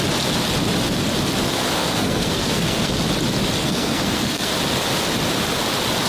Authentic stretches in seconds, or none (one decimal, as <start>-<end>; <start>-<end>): 0.0-1.8; 2.9-3.6; 4.5-6.1